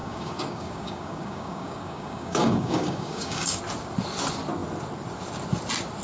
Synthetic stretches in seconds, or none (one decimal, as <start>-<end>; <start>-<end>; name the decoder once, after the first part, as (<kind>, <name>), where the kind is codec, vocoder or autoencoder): 0.0-3.6 (codec, DAC)